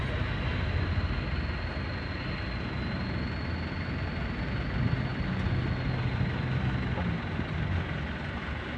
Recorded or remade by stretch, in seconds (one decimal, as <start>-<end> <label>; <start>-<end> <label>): 0.0-8.8 recorded